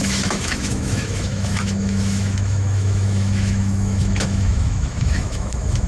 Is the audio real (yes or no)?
no